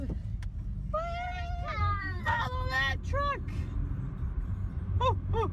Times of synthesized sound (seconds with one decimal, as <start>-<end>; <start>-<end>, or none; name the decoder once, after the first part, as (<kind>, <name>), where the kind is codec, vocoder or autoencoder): 1.8-2.4 (codec, SNAC)